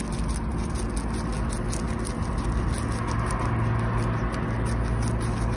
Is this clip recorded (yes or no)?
yes